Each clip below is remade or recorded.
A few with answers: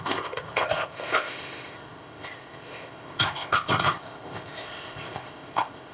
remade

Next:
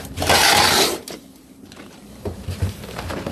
remade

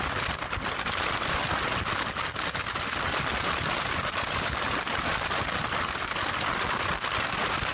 recorded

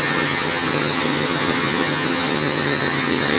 remade